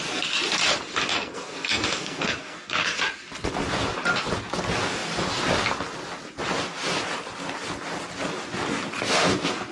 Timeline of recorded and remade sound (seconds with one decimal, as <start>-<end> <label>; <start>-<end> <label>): 0.0-1.1 recorded; 1.1-3.0 remade; 3.0-9.7 recorded